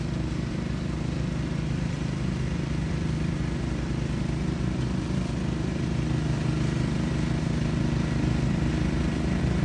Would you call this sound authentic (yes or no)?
no